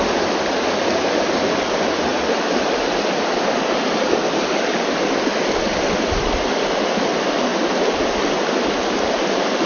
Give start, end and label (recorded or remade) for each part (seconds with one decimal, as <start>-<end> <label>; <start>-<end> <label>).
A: 0.0-9.7 recorded